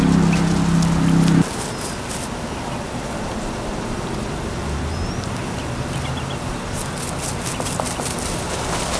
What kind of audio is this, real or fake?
real